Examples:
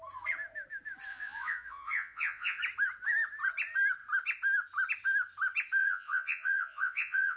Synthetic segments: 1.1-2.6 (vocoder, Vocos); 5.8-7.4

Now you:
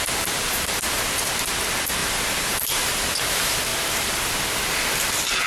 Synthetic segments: 2.0-3.1 (vocoder, BigVGAN v2); 3.7-4.3

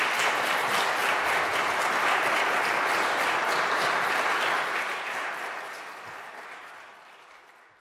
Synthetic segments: none

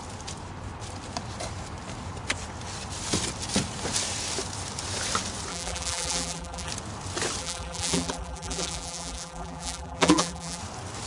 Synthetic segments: 5.5-6.7 (vocoder, BigVGAN v2); 7.4-10.6

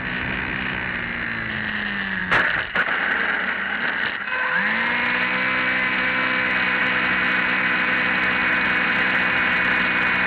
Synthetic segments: none

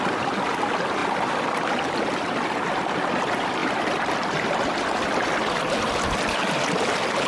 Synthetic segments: 1.0-2.4 (vocoder, BigVGAN v2); 3.6-5.4

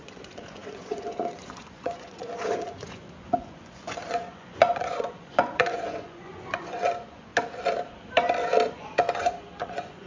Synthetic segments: 0.0-7.3 (vocoder, Vocos); 8.7-10.1

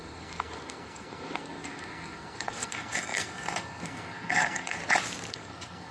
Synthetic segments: 0.0-4.8 (codec, SNAC); 5.3-5.9